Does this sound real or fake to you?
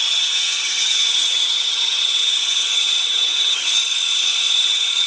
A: fake